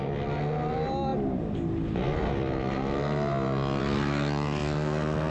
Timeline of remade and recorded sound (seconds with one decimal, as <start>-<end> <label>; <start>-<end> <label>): 0.0-5.3 recorded